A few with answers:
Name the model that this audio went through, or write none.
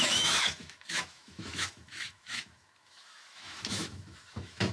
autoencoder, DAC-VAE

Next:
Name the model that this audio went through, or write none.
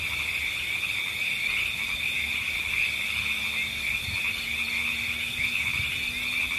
none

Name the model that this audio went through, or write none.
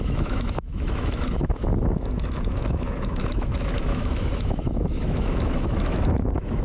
autoencoder, DAC-VAE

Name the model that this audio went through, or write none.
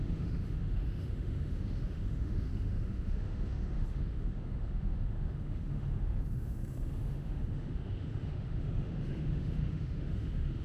autoencoder, DAC-VAE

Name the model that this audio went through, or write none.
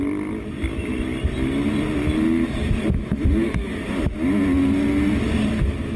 none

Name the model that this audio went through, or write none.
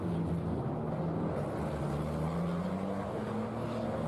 none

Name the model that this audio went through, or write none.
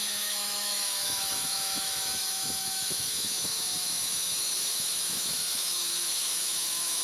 autoencoder, DAC-VAE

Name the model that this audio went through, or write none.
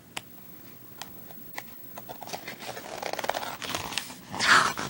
none